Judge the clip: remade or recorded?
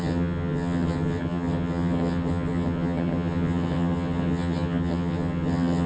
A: remade